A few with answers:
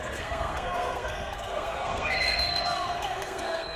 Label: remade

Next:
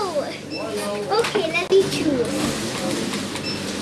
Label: recorded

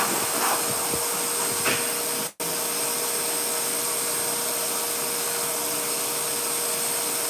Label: recorded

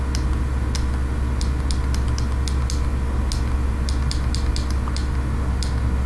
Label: recorded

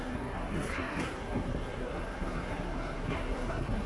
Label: remade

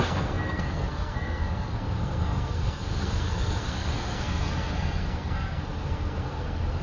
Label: remade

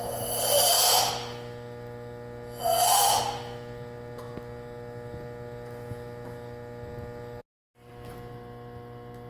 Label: recorded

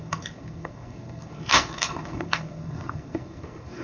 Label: remade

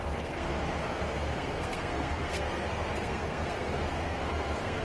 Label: remade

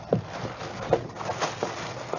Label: recorded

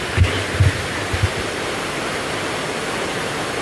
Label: recorded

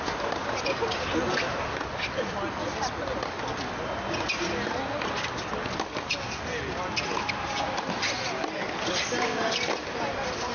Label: recorded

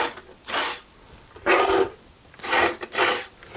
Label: recorded